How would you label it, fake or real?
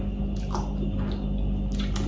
real